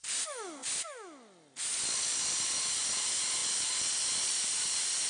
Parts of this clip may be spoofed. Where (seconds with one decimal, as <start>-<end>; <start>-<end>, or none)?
none